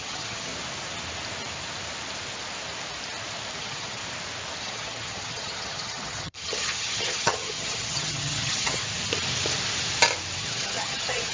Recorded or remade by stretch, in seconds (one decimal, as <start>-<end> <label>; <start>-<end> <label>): 0.0-0.5 remade; 0.5-3.6 recorded; 3.6-4.0 remade; 4.0-4.6 recorded; 4.6-8.8 remade; 8.8-10.4 recorded; 10.4-11.3 remade